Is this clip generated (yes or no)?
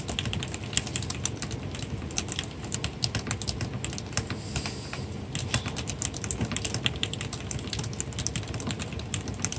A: no